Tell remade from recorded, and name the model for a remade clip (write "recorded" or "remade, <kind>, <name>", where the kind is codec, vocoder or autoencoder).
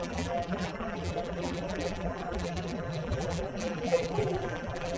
remade, vocoder, BigVGAN v2